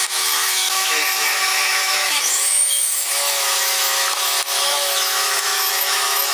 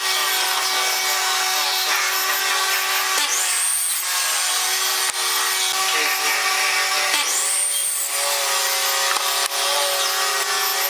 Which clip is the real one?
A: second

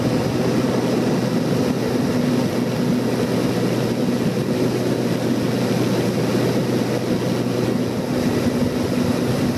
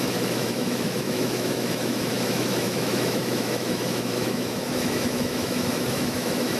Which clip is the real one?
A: first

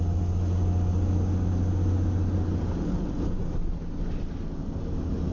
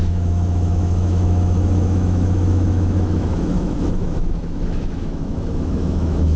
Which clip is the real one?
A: first